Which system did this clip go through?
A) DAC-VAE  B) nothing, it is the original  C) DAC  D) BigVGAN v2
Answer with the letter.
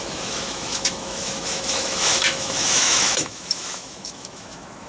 A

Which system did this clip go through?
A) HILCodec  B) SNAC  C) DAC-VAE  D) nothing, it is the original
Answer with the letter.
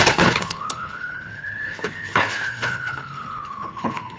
A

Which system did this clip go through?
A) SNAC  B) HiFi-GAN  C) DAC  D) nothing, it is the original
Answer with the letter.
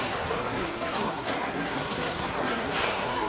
A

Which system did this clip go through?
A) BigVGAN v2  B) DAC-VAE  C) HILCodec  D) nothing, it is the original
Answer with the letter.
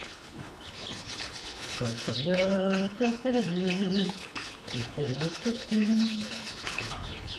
C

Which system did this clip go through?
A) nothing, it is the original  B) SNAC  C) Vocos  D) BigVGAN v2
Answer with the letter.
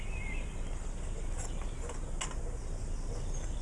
A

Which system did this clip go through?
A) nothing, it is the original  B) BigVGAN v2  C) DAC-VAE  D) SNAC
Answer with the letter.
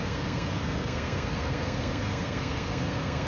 D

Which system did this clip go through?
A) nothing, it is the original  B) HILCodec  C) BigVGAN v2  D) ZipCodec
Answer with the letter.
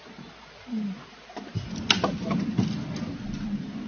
A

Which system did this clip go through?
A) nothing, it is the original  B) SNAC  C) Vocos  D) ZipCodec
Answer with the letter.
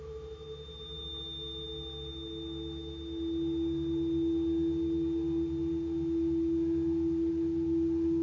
A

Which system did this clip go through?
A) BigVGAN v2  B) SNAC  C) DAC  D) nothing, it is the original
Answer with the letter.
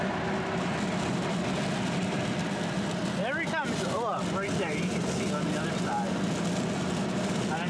D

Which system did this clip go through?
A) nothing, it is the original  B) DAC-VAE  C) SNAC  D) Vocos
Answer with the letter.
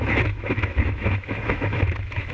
B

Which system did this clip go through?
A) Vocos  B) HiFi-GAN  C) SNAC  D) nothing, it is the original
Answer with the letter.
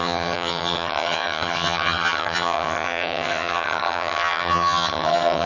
B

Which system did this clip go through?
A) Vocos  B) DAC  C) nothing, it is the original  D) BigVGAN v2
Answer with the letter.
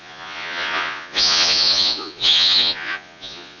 A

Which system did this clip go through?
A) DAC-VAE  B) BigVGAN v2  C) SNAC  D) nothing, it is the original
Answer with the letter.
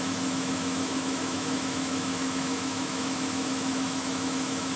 A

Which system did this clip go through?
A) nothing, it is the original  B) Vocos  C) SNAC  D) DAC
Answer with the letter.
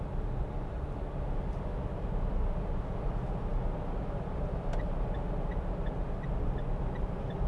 A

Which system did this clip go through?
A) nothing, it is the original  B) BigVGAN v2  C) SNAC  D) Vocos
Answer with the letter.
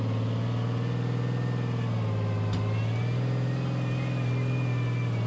A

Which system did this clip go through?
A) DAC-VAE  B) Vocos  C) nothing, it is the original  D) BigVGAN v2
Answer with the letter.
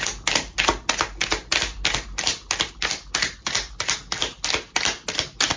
C